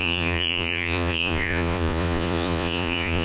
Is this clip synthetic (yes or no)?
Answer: yes